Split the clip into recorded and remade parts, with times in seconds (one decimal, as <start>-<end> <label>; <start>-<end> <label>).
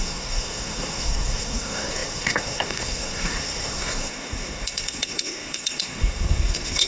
0.0-6.9 remade